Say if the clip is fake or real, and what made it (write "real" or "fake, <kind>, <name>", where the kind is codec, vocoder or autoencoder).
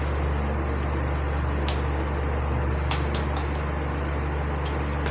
real